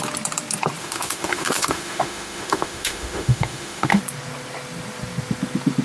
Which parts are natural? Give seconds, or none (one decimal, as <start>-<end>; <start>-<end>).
0.0-0.8; 4.0-5.8